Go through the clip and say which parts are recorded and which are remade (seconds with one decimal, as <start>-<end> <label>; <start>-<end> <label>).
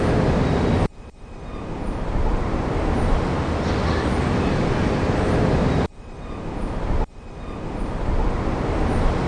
0.0-9.3 recorded